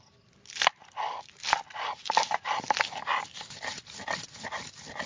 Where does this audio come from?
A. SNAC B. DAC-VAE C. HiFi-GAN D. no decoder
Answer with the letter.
D